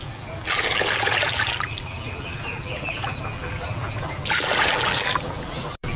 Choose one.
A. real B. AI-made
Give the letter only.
B